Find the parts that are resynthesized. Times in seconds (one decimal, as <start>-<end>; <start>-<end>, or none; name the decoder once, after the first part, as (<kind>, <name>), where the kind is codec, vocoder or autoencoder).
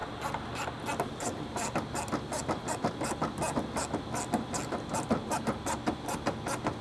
none